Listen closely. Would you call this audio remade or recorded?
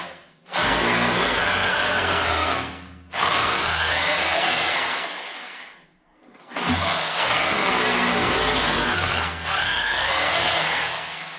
remade